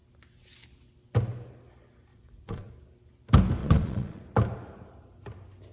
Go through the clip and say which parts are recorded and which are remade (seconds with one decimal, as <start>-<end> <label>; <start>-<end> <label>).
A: 0.0-2.1 recorded; 2.1-2.7 remade; 2.7-3.6 recorded; 3.6-4.2 remade; 4.2-5.7 recorded